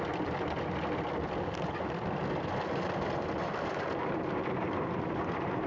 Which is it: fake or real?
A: real